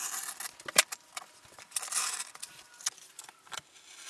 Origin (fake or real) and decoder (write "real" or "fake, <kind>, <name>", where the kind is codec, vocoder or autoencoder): real